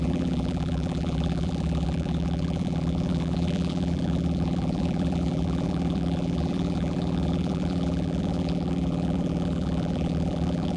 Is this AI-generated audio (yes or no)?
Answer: yes